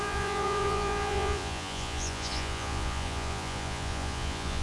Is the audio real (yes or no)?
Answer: no